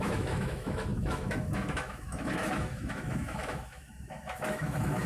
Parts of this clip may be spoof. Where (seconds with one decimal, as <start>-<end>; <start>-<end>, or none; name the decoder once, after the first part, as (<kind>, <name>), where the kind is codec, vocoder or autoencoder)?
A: 0.0-5.1 (autoencoder, DAC-VAE)